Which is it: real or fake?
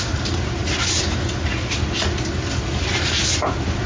real